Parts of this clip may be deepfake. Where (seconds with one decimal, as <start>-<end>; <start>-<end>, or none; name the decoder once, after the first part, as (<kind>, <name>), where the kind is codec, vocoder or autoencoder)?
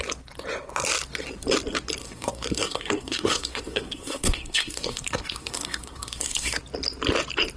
2.0-6.6 (codec, SNAC)